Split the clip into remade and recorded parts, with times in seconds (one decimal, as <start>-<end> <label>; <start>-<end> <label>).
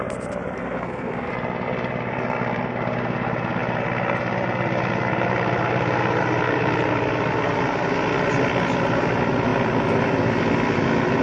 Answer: 0.0-0.6 recorded; 0.6-1.3 remade; 1.3-11.2 recorded